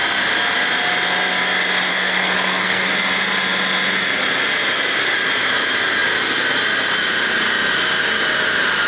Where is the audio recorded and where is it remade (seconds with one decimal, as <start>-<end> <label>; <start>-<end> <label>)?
0.0-1.9 recorded; 1.9-2.9 remade; 2.9-8.9 recorded